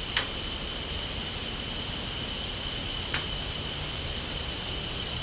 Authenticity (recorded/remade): recorded